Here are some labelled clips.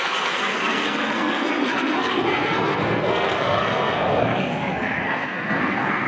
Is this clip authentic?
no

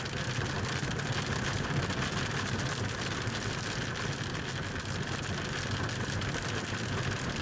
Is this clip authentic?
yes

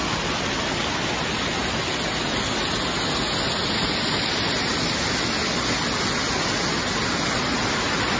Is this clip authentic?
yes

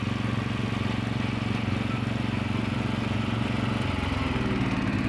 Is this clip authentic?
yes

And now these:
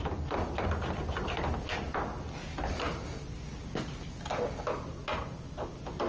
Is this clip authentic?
yes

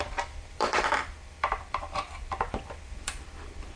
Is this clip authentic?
no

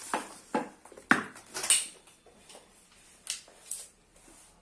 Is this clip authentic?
yes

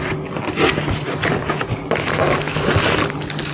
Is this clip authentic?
yes